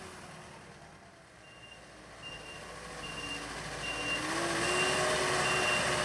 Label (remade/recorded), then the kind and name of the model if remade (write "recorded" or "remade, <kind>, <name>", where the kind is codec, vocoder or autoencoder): recorded